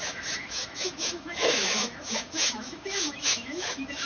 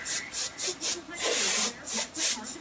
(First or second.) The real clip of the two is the second